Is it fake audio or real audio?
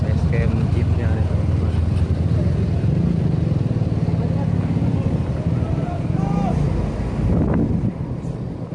real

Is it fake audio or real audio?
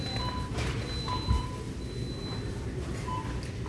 real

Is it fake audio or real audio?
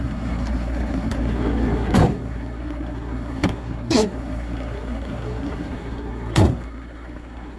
fake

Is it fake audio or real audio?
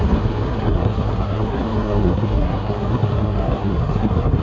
fake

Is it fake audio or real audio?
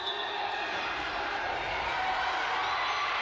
real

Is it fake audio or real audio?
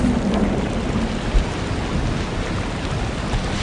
real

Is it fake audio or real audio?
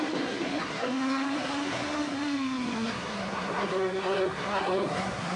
fake